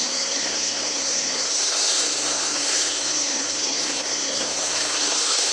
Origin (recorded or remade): remade